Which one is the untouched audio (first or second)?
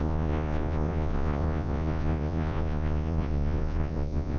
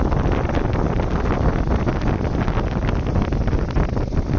second